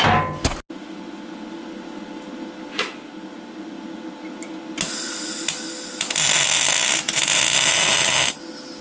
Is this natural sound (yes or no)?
yes